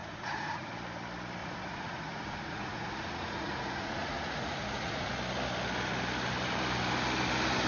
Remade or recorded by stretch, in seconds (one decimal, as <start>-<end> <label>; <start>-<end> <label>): 0.0-0.7 remade; 0.7-1.4 recorded; 1.4-5.1 remade; 5.1-7.7 recorded